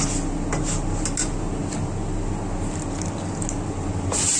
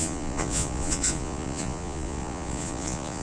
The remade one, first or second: second